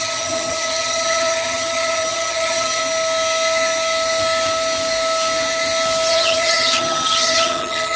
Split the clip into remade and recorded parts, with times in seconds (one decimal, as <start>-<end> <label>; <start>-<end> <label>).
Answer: 0.0-2.8 remade; 2.8-6.1 recorded; 6.1-8.0 remade